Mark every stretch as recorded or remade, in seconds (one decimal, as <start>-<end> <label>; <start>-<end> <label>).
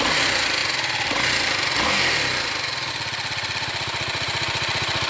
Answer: 0.0-5.1 recorded